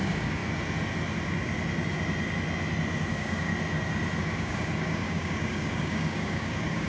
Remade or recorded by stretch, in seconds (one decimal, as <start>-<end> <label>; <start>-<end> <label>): 0.0-0.4 remade; 0.4-3.1 recorded; 3.1-3.5 remade; 3.5-4.2 recorded; 4.2-6.9 remade